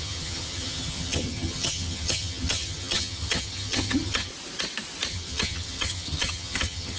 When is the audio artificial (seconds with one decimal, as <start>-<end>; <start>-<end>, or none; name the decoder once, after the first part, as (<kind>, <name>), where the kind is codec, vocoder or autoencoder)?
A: 0.0-4.3 (vocoder, HiFi-GAN); 5.1-7.0